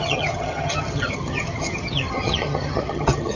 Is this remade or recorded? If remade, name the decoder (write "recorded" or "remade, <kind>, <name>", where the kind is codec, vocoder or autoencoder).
remade, vocoder, HiFi-GAN